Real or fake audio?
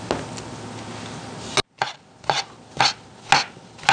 real